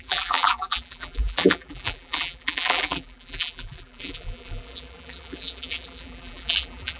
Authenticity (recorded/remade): remade